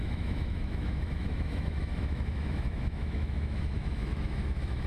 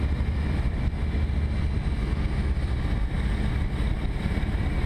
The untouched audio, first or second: second